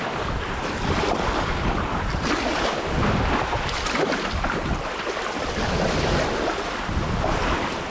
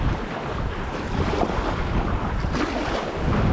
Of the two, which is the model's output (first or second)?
first